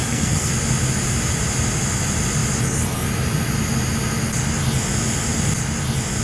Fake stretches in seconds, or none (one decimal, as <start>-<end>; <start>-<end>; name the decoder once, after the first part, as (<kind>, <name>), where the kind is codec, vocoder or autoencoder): 0.0-0.5 (codec, SNAC)